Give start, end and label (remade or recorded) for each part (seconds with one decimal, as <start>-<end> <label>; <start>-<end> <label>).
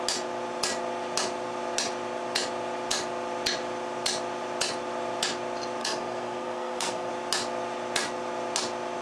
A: 0.0-5.8 recorded; 5.8-7.1 remade; 7.1-9.0 recorded